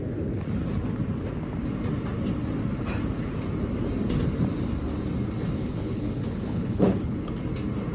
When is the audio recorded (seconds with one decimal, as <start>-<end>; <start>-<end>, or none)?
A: 0.0-5.6; 7.3-7.9